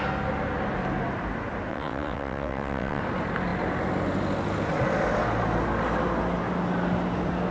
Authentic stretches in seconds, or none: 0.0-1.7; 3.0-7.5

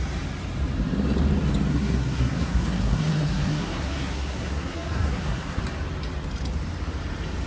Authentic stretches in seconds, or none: 0.0-1.7; 5.6-7.5